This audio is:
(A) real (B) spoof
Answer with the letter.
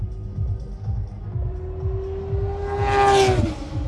A